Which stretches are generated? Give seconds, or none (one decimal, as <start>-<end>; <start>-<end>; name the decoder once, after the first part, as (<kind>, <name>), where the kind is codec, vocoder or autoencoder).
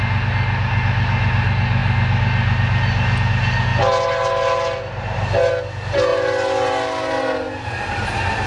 none